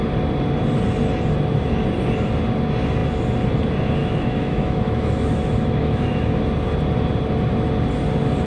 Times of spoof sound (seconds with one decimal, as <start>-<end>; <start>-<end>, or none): 4.0-6.4